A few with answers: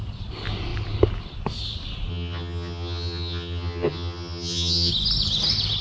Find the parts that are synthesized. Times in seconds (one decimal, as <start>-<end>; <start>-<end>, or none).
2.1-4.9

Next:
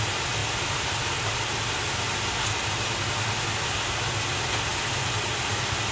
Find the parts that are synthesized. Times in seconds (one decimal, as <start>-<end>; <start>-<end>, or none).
none

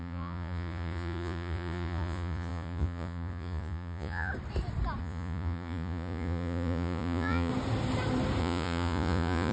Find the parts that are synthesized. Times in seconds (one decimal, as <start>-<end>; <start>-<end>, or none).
0.0-4.3; 5.0-7.5; 8.4-9.5

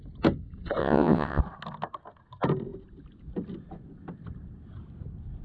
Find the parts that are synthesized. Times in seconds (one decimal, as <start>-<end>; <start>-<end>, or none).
0.8-1.4

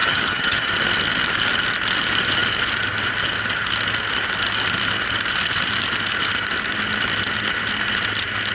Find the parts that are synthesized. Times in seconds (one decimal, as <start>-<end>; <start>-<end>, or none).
0.0-0.7

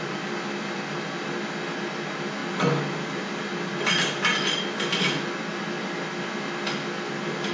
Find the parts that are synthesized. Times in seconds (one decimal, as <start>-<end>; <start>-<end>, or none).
none